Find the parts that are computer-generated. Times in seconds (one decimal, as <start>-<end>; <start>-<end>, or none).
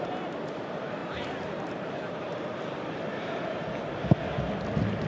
1.0-4.1